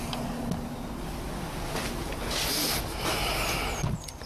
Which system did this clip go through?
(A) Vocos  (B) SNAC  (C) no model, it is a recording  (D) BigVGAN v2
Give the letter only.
C